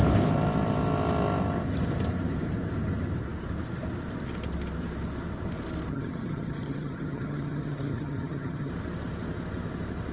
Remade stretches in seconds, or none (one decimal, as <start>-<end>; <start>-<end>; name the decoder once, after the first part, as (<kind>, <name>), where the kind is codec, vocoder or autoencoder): 5.9-8.7 (vocoder, HiFi-GAN)